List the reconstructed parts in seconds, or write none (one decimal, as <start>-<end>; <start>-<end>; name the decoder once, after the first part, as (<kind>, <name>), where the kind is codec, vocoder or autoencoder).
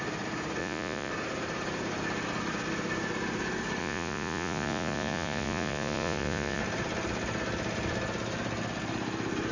0.6-1.1 (vocoder, Vocos); 3.8-6.6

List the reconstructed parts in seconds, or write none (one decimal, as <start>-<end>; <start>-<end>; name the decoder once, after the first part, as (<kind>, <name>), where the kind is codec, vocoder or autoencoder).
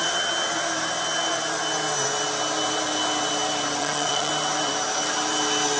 3.8-4.3 (vocoder, Vocos)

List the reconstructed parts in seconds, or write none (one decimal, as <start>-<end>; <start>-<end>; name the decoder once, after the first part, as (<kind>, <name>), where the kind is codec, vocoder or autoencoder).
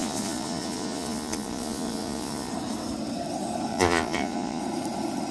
0.0-2.5 (vocoder, Vocos); 3.7-4.6